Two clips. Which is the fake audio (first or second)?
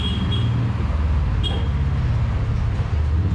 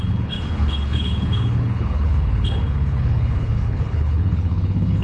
second